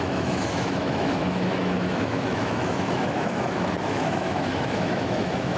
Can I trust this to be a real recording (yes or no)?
no